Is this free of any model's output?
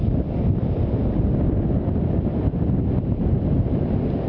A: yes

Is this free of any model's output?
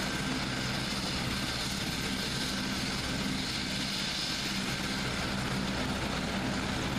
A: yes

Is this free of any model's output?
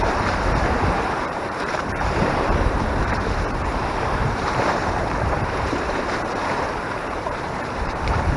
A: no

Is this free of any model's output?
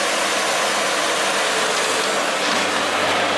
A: yes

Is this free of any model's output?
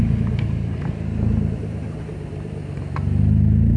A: yes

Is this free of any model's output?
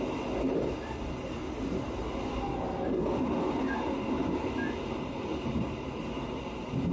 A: yes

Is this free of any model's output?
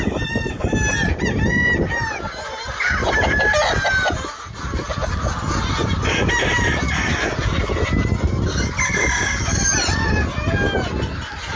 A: yes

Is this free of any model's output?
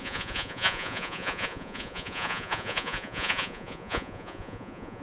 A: no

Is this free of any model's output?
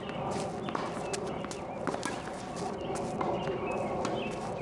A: yes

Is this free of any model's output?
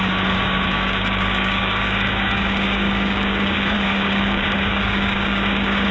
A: no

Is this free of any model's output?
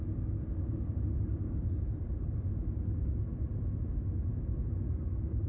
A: yes